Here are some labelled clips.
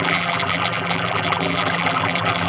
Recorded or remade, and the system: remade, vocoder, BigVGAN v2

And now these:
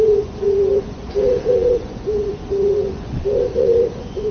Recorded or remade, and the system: remade, vocoder, Vocos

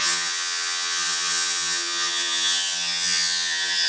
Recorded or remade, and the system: remade, vocoder, HiFi-GAN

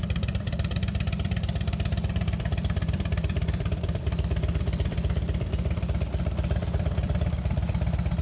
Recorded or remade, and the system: remade, vocoder, BigVGAN v2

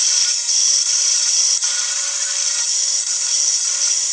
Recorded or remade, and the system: recorded